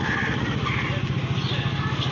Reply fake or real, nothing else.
real